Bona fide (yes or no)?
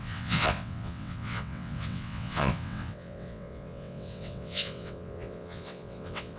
no